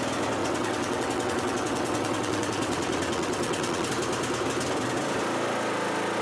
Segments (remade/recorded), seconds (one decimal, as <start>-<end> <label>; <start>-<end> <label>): 0.0-0.4 recorded; 0.4-3.9 remade; 3.9-6.2 recorded